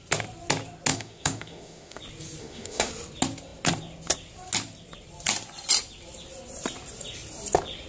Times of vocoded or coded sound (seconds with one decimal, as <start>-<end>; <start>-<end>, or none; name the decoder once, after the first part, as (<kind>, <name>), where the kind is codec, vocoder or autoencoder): 0.9-2.0 (autoencoder, DAC-VAE); 2.4-2.9